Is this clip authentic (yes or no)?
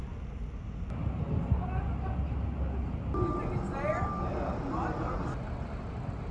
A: yes